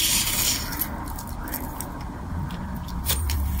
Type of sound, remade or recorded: recorded